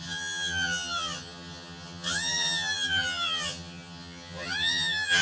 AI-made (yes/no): yes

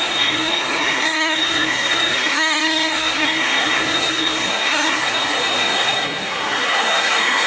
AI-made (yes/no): yes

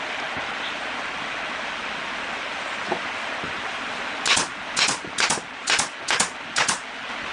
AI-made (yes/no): no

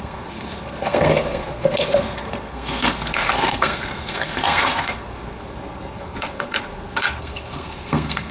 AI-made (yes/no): yes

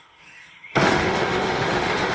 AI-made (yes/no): yes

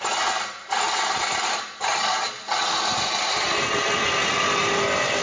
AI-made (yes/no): no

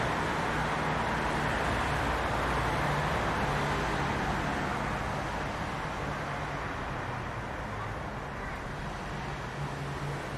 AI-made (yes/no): no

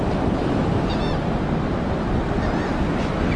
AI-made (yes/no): no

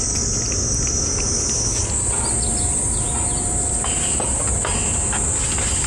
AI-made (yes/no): no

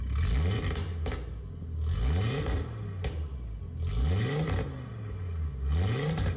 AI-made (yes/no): no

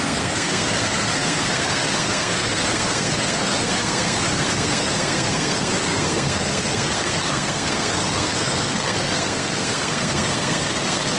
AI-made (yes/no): yes